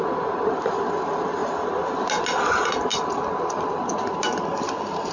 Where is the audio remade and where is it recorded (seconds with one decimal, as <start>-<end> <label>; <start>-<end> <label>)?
0.0-2.9 recorded; 2.9-5.1 remade